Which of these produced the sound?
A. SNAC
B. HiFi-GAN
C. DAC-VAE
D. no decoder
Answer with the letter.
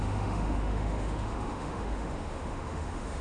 C